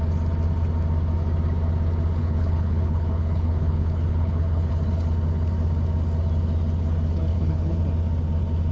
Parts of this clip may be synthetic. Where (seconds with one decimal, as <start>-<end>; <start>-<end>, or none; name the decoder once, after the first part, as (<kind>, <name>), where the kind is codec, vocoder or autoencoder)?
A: 2.2-4.7 (codec, HILCodec); 7.3-7.8